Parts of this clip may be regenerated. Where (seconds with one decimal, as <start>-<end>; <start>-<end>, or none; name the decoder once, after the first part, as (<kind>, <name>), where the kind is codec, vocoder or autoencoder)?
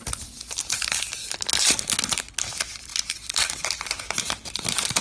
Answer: none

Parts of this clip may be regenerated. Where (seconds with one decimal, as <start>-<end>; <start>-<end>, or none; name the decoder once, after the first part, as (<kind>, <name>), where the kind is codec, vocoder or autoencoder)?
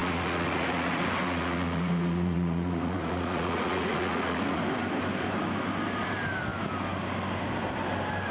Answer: 0.0-4.6 (vocoder, Vocos)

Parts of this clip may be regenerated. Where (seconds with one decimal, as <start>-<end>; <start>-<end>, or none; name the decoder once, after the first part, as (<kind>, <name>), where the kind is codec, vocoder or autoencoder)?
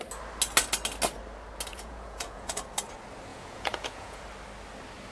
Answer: 1.7-2.6 (vocoder, Vocos); 3.3-4.2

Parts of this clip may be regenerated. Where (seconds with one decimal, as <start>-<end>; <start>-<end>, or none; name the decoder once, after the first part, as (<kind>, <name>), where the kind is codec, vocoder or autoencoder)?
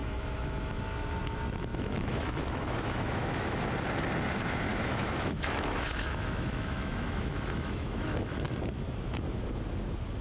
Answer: 0.0-0.7 (autoencoder, DAC-VAE); 1.7-3.6; 4.7-8.5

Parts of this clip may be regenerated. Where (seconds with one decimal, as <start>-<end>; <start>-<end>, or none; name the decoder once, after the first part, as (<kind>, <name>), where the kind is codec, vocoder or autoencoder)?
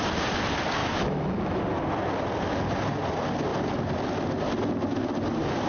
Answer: 0.8-1.6 (autoencoder, DAC-VAE)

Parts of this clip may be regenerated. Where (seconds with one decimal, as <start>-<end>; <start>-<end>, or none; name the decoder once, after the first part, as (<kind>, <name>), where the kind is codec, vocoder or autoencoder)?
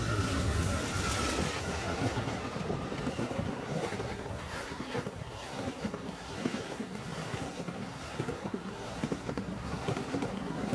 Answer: 0.0-0.8 (codec, SNAC); 1.6-2.4; 3.1-10.7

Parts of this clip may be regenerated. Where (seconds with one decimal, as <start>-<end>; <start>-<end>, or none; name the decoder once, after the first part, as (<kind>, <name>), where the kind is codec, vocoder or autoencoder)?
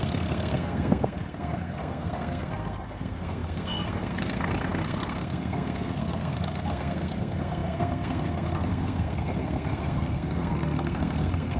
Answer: 0.0-11.6 (codec, SNAC)